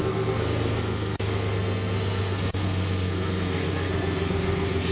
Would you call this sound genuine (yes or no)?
no